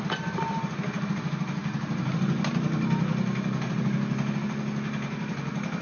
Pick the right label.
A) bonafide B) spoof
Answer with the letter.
A